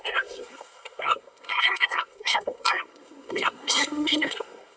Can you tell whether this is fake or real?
fake